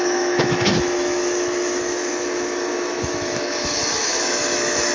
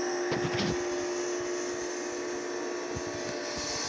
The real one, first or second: second